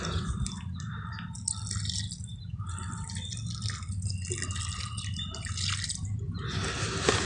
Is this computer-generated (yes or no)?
no